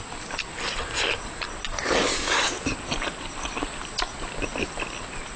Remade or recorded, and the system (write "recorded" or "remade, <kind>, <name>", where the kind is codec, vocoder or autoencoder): recorded